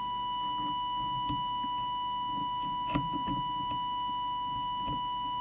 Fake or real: real